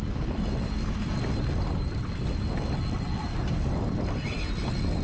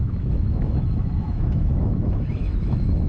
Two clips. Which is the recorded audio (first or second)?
first